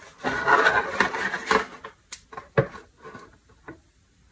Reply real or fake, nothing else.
real